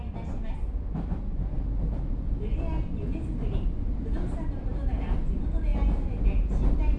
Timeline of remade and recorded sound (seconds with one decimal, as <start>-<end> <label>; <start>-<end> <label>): 0.0-7.0 recorded